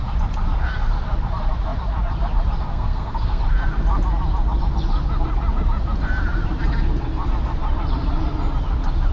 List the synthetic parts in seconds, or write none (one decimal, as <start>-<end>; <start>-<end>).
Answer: 2.7-3.4